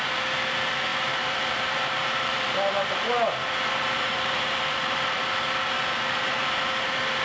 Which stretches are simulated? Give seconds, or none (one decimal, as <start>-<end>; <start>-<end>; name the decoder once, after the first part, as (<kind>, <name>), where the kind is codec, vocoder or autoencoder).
0.9-5.2 (vocoder, BigVGAN v2)